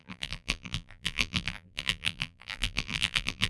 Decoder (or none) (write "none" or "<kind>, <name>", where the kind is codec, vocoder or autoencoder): vocoder, BigVGAN v2